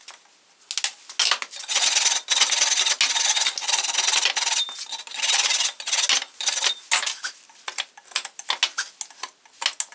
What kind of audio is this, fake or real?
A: real